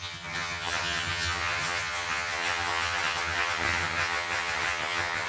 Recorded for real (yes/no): no